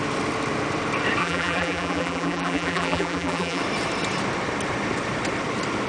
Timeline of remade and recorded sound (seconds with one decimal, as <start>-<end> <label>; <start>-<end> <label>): 0.0-1.2 recorded; 1.2-3.6 remade; 3.6-5.9 recorded

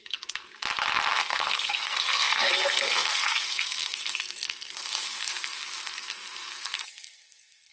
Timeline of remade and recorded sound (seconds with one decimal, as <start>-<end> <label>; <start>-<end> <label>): 0.0-0.5 remade; 0.5-1.2 recorded; 1.2-7.7 remade

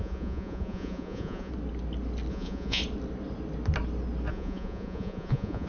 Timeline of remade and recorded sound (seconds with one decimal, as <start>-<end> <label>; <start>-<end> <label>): 0.0-1.5 remade; 1.5-2.3 recorded; 2.3-2.8 remade; 2.8-4.3 recorded; 4.3-5.7 remade

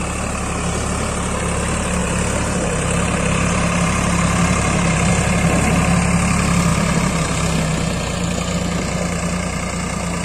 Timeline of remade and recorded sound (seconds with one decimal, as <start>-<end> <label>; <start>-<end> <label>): 0.0-2.0 recorded; 2.0-5.1 remade; 5.1-6.7 recorded; 6.7-7.4 remade; 7.4-10.2 recorded

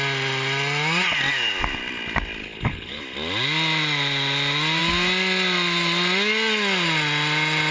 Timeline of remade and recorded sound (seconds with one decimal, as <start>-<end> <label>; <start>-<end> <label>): 0.0-2.4 recorded; 2.4-3.0 remade; 3.0-7.7 recorded